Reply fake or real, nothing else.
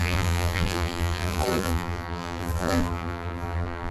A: fake